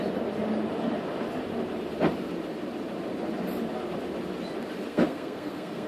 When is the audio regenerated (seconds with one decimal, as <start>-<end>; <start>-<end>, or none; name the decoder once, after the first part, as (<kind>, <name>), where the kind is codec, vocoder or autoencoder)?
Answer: 4.9-5.9 (codec, SNAC)